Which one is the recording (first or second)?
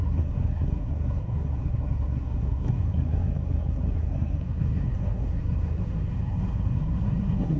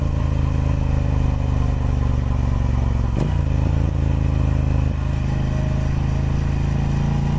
second